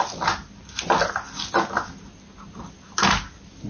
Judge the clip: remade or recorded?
recorded